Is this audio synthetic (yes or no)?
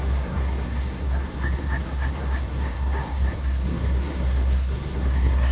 yes